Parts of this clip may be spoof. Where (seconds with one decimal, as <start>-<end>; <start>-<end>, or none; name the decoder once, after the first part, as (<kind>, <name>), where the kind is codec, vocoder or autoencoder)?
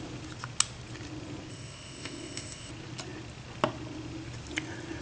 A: 1.5-2.7 (codec, ZipCodec)